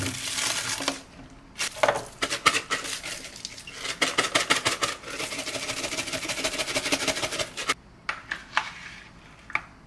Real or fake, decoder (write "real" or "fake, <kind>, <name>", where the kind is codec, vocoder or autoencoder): real